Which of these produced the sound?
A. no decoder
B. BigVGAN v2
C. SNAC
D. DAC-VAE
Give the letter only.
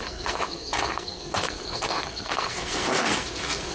C